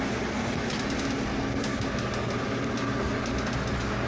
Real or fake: real